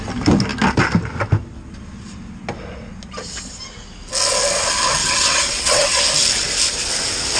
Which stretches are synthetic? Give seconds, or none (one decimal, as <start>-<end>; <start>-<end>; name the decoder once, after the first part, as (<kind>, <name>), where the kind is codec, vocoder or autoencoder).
5.0-6.0 (vocoder, WaveNeXt)